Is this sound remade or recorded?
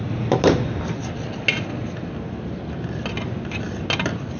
recorded